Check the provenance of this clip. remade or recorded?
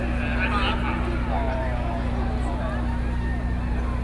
recorded